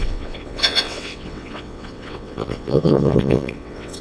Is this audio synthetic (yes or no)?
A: yes